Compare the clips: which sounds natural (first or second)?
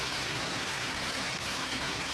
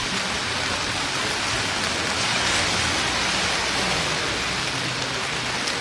second